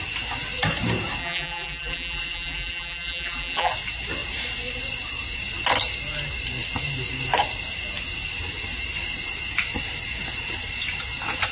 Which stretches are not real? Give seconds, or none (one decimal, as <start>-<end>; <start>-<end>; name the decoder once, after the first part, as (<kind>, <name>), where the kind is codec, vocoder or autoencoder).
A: 1.2-3.7 (vocoder, BigVGAN v2)